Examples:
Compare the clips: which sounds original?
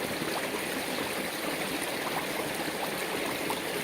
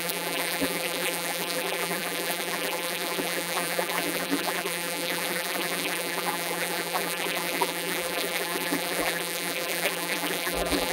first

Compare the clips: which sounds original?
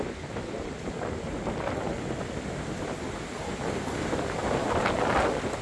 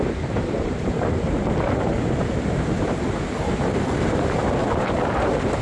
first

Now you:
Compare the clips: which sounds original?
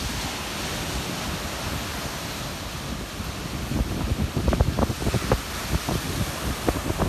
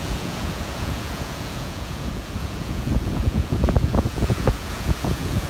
first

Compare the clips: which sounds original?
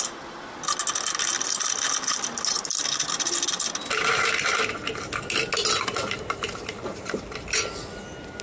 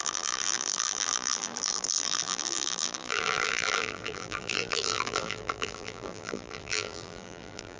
first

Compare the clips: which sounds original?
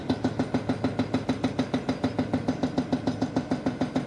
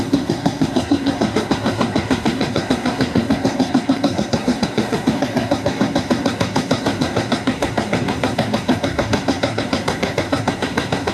first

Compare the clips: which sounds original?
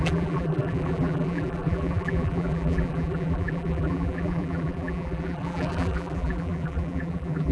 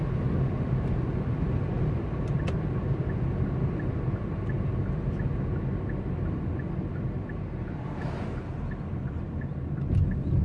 second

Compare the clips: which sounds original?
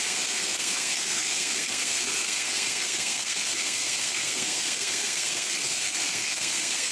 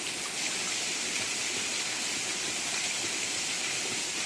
second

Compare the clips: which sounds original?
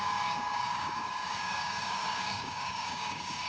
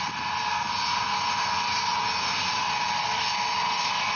second